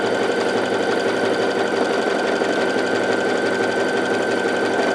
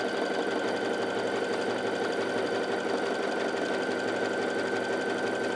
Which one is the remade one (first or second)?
first